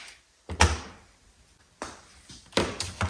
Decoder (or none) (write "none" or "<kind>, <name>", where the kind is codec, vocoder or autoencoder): vocoder, BigVGAN v2